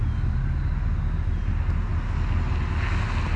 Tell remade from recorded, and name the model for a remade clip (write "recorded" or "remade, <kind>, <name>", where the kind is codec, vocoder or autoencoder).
recorded